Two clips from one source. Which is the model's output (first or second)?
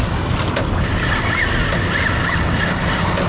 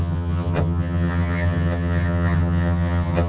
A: second